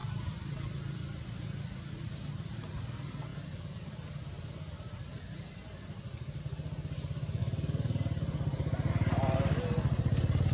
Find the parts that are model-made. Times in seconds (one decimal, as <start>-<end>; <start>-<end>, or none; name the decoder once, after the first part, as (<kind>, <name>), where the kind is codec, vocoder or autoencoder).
0.0-2.5 (vocoder, BigVGAN v2); 7.4-8.9